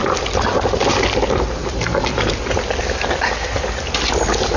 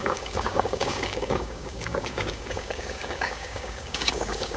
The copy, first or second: second